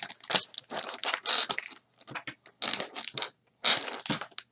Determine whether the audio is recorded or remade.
recorded